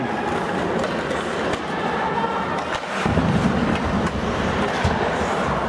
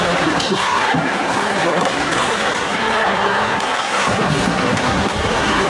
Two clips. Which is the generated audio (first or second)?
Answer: second